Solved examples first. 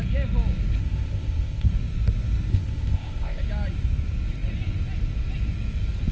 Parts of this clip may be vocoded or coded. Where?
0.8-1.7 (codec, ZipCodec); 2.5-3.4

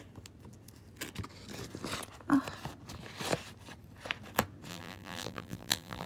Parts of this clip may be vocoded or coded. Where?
4.7-6.1 (vocoder, BigVGAN v2)

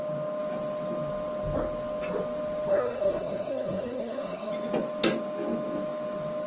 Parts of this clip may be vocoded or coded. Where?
2.7-4.5 (codec, SNAC)

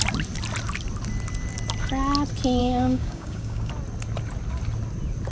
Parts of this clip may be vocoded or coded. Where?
2.6-3.7 (codec, DAC)

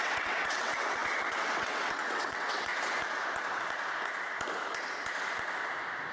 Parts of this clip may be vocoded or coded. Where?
0.0-2.7 (vocoder, WaveNeXt)

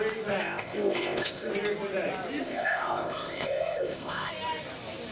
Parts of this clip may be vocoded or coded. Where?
0.4-1.5 (codec, ZipCodec); 2.4-4.3

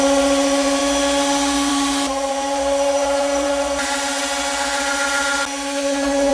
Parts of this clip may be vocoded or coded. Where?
0.0-0.8 (vocoder, BigVGAN v2); 1.7-4.2

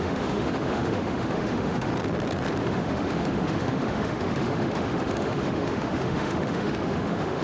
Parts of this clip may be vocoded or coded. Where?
0.0-1.9 (autoencoder, DAC-VAE); 2.6-7.4